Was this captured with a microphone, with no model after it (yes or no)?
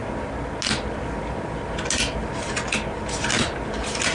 yes